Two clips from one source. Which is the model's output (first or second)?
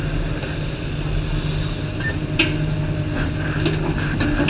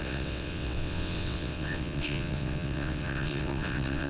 second